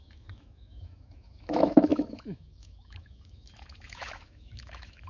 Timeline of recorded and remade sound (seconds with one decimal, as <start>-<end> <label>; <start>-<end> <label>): 0.0-5.1 remade